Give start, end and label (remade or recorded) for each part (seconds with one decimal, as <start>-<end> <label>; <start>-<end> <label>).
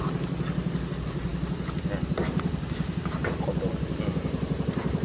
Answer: 0.0-5.0 recorded